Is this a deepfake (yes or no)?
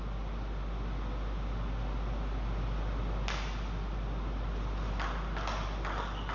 no